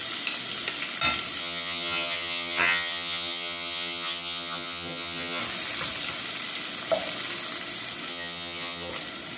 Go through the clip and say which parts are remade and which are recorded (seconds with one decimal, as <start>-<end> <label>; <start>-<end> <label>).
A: 0.0-1.4 recorded; 1.4-5.4 remade; 5.4-8.1 recorded; 8.1-8.9 remade; 8.9-9.4 recorded